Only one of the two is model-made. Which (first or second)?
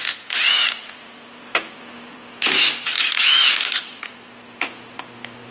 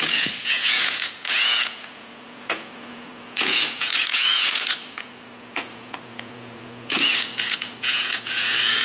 second